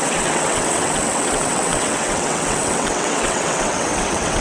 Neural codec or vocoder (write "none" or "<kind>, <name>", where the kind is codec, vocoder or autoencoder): vocoder, WaveNeXt